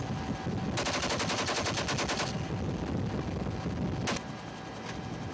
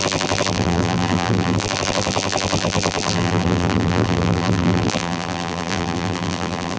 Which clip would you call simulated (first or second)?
second